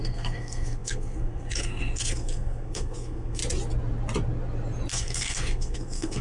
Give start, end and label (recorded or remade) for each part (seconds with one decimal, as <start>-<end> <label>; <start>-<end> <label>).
0.0-3.4 remade; 3.4-4.9 recorded; 4.9-6.2 remade